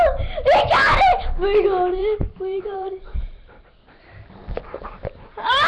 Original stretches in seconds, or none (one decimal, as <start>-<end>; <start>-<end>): 0.0-2.0